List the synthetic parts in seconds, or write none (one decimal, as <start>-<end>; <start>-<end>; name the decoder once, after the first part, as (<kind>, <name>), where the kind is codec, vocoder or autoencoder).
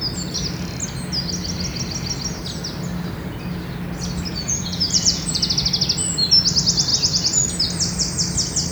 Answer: 4.3-5.5 (vocoder, Vocos)